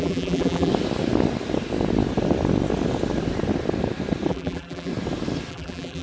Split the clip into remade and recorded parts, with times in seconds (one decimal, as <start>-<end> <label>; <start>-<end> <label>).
0.0-0.7 remade; 0.7-4.3 recorded; 4.3-4.9 remade; 4.9-5.5 recorded; 5.5-6.0 remade